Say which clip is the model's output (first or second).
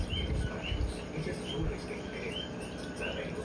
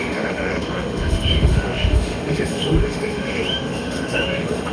second